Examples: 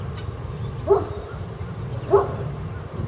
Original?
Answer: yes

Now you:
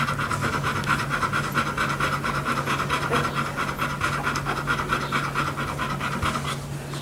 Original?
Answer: yes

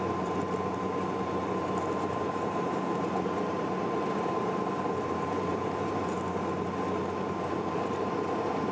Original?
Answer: no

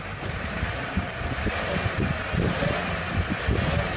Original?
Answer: no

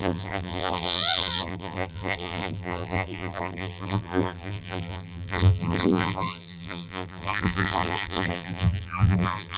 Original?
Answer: no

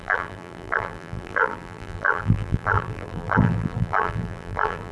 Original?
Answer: no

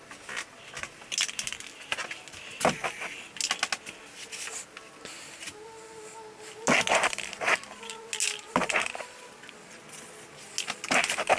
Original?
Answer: yes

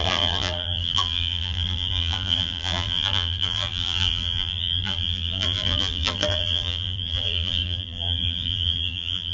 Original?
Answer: no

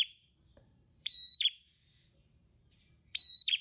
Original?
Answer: no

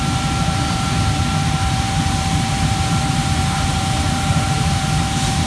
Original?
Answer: no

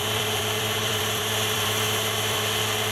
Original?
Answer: no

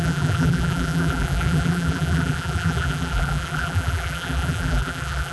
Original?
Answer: no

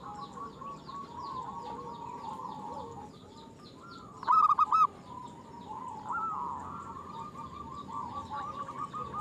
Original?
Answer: yes